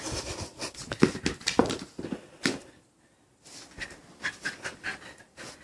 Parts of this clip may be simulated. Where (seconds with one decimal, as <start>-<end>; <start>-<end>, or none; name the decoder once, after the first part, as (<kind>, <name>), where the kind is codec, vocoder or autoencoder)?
none